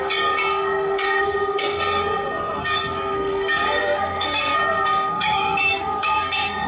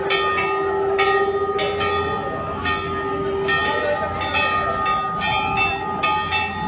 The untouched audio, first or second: second